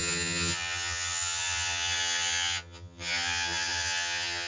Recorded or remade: remade